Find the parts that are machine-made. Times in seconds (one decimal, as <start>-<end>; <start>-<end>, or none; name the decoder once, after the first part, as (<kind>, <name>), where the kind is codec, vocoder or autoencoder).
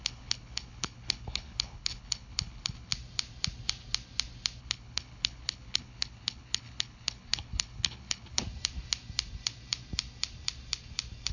0.0-2.9 (codec, HILCodec); 4.6-8.4